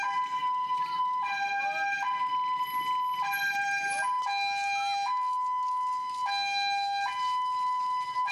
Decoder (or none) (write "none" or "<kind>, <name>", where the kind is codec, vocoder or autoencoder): none